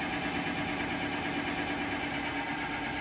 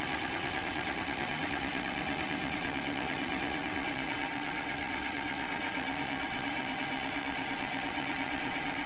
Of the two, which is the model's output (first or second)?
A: second